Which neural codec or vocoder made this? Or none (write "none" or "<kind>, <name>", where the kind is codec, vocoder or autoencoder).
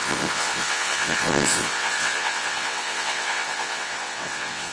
vocoder, WaveNeXt